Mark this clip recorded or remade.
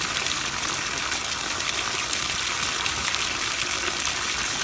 recorded